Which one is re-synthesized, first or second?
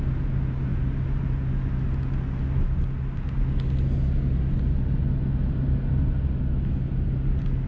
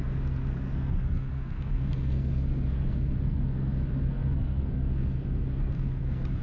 second